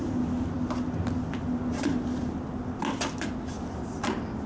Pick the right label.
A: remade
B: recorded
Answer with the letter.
B